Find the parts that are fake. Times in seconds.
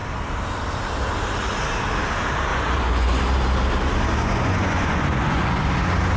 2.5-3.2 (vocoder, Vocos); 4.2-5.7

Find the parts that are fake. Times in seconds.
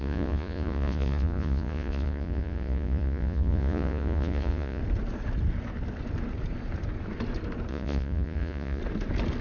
0.0-4.8 (vocoder, Vocos); 7.7-8.8